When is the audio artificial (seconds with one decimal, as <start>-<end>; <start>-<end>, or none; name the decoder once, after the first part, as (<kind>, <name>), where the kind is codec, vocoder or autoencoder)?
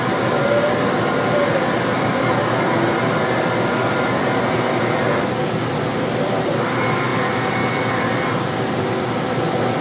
none